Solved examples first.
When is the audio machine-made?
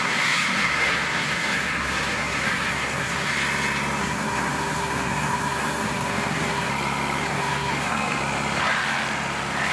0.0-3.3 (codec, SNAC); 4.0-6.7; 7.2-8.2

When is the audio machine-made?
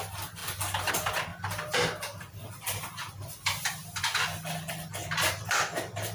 0.0-6.1 (vocoder, BigVGAN v2)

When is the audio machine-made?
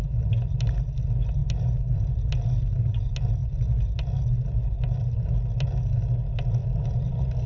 none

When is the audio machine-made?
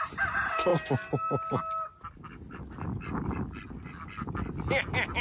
none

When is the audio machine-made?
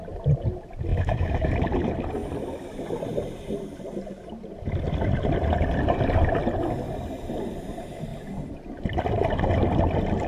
0.9-1.5 (autoencoder, DAC-VAE)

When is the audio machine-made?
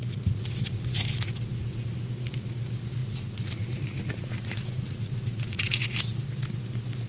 0.0-1.3 (vocoder, Vocos); 3.0-5.8